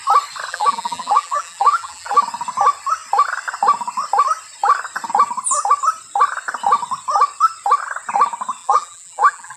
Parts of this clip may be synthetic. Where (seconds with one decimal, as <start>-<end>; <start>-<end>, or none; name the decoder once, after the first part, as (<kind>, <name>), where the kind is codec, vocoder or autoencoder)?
0.5-2.2 (vocoder, BigVGAN v2); 8.6-9.6